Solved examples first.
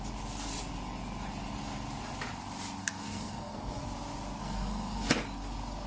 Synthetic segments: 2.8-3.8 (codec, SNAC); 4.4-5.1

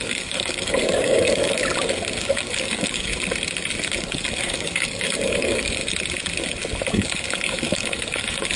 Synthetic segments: 0.0-1.6 (codec, DAC); 2.2-3.1; 4.0-5.8; 6.9-8.6

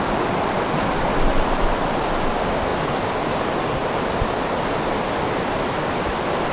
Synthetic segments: none